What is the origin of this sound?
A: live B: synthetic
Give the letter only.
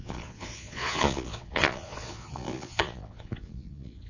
B